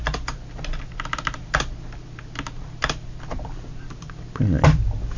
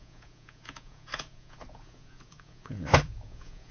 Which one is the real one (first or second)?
first